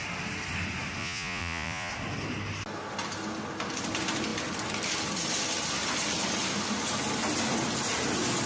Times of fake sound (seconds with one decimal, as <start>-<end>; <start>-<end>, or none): 1.0-1.9